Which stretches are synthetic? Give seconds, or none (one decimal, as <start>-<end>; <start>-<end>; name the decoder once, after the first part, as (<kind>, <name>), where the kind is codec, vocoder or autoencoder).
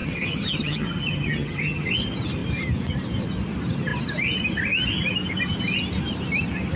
0.0-1.9 (vocoder, HiFi-GAN)